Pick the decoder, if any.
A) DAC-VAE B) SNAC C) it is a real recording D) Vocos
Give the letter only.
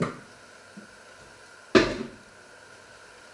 C